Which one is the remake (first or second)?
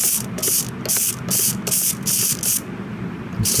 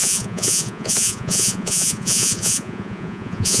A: second